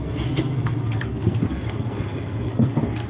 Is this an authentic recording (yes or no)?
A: no